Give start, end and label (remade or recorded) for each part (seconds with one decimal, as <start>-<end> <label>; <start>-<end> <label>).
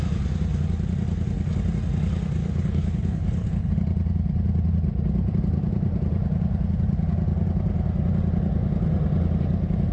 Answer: 0.0-2.4 recorded; 2.4-3.7 remade; 3.7-9.9 recorded